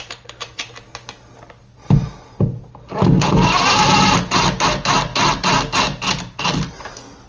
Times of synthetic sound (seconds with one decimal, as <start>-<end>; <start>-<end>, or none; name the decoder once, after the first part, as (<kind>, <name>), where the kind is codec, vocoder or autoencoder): none